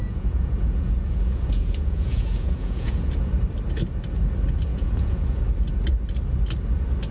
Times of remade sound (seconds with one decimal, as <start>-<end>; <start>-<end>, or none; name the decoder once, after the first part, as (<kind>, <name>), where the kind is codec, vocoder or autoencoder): 0.0-3.3 (vocoder, Vocos); 4.7-5.4